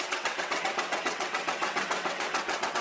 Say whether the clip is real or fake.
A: fake